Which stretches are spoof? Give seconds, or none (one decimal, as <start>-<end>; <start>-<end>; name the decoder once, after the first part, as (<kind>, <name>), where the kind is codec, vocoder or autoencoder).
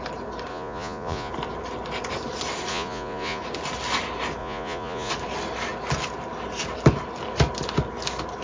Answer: 0.5-1.3 (vocoder, Vocos); 2.7-3.4; 4.4-5.1